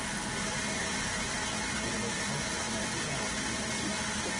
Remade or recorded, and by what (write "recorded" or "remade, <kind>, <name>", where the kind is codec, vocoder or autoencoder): recorded